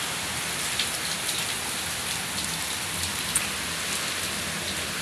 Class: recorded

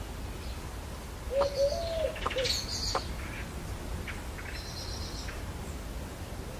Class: recorded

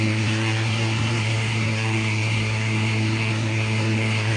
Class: remade